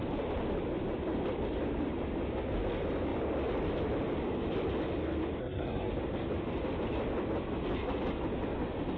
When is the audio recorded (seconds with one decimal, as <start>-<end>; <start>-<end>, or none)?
0.0-5.4; 5.9-9.0